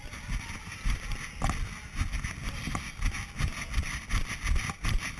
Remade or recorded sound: recorded